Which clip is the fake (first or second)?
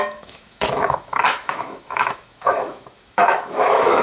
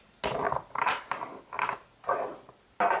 first